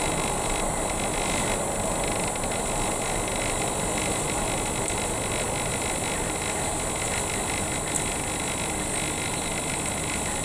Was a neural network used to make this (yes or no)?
no